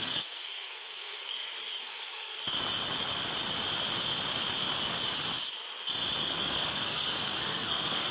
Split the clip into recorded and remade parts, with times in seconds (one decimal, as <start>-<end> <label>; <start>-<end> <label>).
0.0-1.3 remade; 1.3-1.8 recorded; 1.8-2.4 remade; 2.4-6.2 recorded; 6.2-8.1 remade